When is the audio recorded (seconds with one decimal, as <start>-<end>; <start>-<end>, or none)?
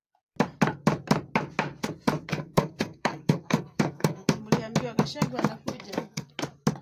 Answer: 0.0-2.3; 4.4-5.7; 6.3-6.8